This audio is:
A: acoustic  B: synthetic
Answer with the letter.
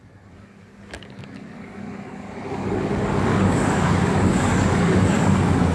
B